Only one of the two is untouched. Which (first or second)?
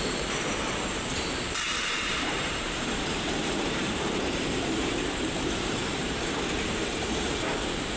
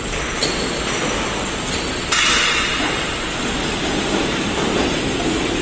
second